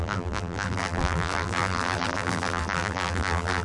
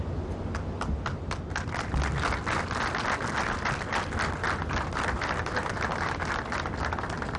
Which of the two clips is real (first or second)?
second